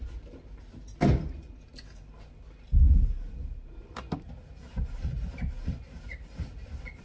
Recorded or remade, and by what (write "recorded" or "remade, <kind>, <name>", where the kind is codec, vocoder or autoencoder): recorded